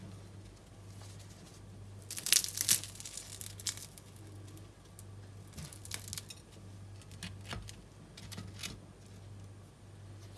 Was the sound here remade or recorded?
recorded